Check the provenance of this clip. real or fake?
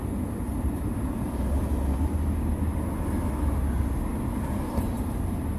real